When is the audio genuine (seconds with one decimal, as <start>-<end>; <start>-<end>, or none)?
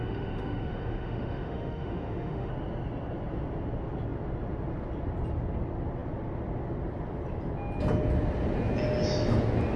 2.5-9.8